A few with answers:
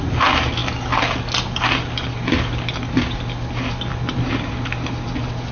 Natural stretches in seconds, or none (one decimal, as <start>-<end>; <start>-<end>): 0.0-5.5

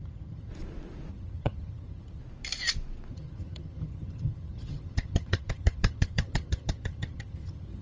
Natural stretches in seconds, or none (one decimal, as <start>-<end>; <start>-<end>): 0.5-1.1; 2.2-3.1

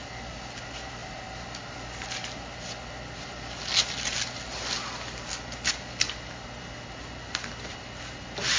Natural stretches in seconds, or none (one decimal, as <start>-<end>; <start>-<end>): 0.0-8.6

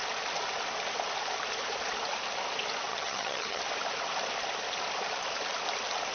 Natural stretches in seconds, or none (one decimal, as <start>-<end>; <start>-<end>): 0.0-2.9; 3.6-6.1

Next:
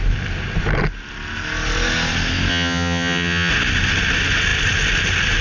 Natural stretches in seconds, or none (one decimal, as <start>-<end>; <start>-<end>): 0.0-2.5; 3.5-5.4